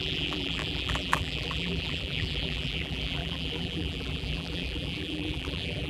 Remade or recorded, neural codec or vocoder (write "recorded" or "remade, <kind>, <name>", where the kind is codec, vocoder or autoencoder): remade, vocoder, BigVGAN v2